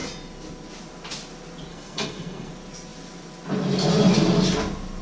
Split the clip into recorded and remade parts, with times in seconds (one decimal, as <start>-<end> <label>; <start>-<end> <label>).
0.0-1.7 recorded; 1.7-2.5 remade; 2.5-5.0 recorded